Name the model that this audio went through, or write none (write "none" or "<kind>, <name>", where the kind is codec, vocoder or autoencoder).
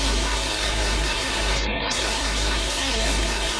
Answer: codec, SNAC